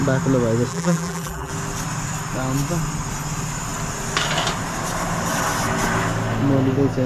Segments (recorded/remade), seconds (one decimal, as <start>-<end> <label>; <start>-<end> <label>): 0.0-0.7 recorded; 0.7-1.5 remade; 1.5-7.1 recorded